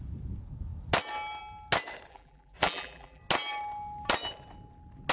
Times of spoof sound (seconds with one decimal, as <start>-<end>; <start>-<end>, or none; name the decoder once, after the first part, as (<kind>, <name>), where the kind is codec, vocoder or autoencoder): 2.1-3.2 (vocoder, BigVGAN v2)